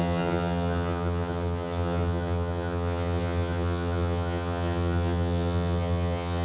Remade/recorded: remade